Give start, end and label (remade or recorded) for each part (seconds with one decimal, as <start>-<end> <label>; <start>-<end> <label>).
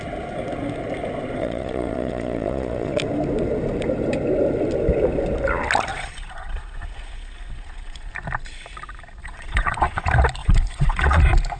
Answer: 0.0-1.4 recorded; 1.4-3.0 remade; 3.0-5.9 recorded; 5.9-8.1 remade; 8.1-9.2 recorded; 9.2-10.0 remade; 10.0-10.4 recorded; 10.4-11.2 remade; 11.2-11.6 recorded